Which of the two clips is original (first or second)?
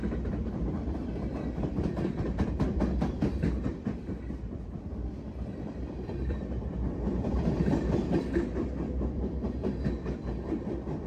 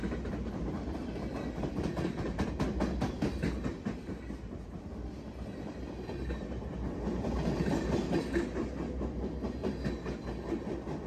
second